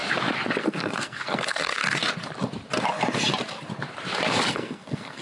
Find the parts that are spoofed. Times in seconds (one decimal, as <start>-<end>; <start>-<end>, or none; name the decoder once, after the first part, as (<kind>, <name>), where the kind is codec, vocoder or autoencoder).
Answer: 0.6-1.8 (codec, SNAC); 4.5-5.2

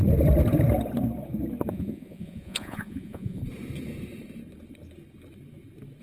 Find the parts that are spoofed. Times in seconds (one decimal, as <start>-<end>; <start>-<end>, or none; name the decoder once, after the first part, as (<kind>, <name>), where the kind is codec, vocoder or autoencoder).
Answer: 1.7-3.4 (vocoder, Vocos)

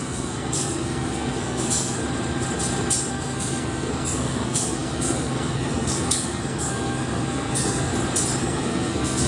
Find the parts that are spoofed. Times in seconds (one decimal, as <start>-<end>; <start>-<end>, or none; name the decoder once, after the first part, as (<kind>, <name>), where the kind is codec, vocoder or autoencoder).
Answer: 0.0-2.0 (codec, SNAC); 3.1-7.9; 8.4-9.3

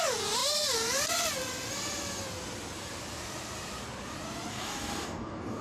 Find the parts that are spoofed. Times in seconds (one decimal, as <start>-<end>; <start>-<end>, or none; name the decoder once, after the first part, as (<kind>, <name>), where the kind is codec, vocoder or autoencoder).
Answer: 4.5-5.6 (codec, DAC)